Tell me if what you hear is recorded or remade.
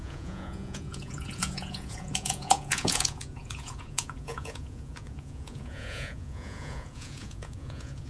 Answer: remade